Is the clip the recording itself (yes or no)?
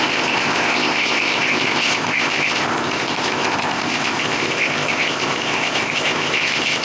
no